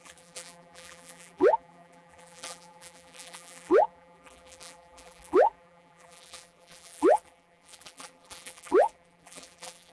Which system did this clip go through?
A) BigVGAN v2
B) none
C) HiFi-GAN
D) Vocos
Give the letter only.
A